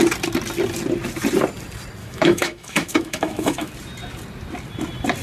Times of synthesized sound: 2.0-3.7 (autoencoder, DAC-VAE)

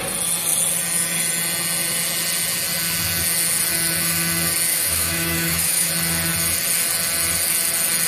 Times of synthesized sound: 4.7-5.9 (autoencoder, DAC-VAE)

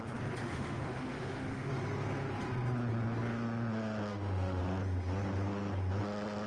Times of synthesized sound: 0.4-1.7 (autoencoder, DAC-VAE); 4.1-4.6

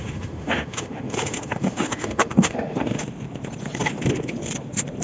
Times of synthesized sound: 0.0-3.0 (autoencoder, DAC-VAE)

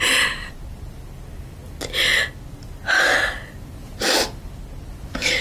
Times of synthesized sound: none

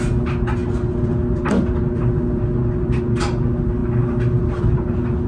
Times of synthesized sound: none

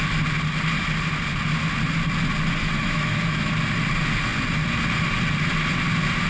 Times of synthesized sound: 2.6-3.5 (autoencoder, DAC-VAE)

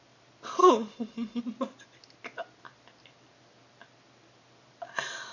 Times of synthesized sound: 0.6-1.4 (autoencoder, DAC-VAE)